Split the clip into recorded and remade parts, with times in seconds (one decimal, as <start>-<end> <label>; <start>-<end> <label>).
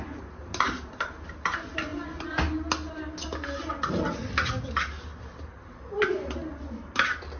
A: 0.0-7.4 recorded